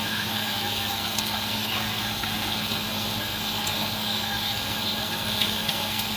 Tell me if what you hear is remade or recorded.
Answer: remade